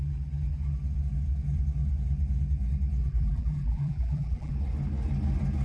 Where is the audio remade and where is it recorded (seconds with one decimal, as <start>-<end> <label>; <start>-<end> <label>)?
0.0-3.0 recorded; 3.0-4.5 remade; 4.5-5.6 recorded